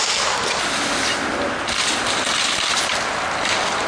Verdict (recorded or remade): recorded